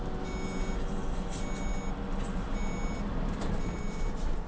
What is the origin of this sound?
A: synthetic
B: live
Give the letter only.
B